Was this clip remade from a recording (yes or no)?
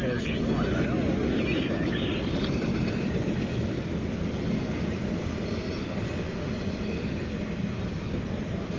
no